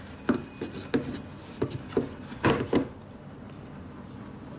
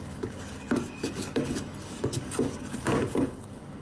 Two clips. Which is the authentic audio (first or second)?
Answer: first